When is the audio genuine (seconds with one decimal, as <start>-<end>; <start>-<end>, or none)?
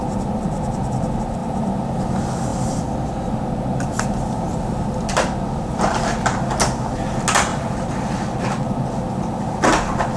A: 0.0-1.4; 2.0-7.5; 9.6-10.2